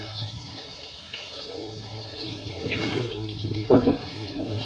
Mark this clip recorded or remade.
remade